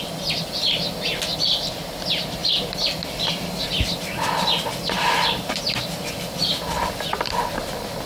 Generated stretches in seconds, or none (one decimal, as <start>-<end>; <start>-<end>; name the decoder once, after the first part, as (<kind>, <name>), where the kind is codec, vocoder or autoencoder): none